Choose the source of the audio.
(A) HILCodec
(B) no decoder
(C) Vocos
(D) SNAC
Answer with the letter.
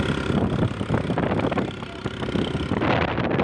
B